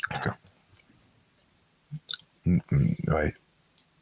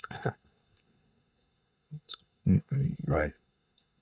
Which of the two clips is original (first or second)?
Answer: first